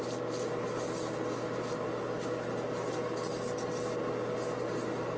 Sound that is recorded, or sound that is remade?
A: recorded